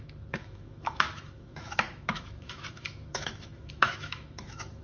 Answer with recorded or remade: remade